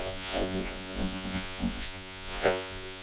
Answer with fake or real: fake